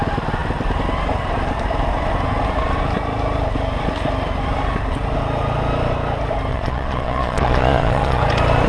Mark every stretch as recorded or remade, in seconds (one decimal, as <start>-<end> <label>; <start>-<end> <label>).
0.0-6.5 recorded; 6.5-8.2 remade; 8.2-8.7 recorded